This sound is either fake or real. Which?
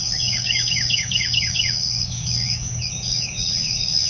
fake